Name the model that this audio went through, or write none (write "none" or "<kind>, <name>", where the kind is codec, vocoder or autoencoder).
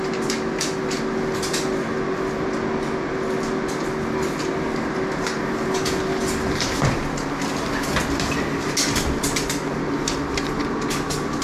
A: none